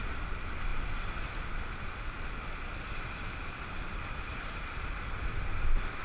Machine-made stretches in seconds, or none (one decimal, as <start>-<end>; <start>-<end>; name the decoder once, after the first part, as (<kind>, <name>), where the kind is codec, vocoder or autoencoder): none